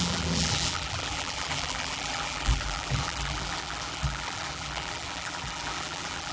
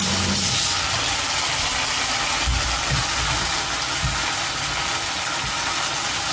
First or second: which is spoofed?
first